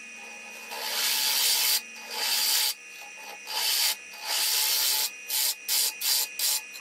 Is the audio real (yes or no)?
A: yes